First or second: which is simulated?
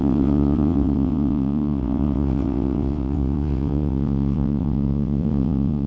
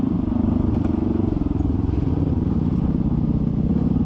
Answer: first